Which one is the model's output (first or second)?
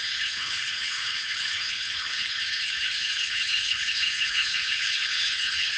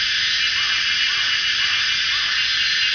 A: first